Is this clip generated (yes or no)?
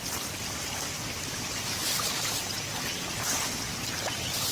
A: no